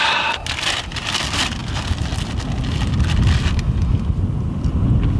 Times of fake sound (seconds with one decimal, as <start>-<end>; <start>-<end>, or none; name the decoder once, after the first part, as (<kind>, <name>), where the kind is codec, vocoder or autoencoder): none